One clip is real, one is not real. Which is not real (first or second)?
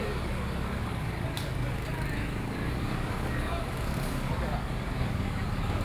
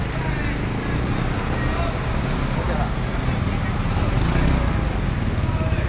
first